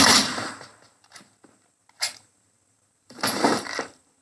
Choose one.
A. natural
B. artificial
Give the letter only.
B